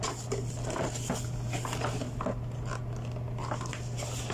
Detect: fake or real real